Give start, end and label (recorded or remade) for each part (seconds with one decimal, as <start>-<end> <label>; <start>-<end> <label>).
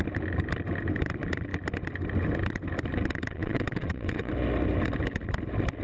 0.0-3.3 recorded; 3.3-4.3 remade; 4.3-5.8 recorded